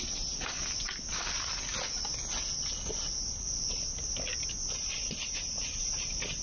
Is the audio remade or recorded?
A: recorded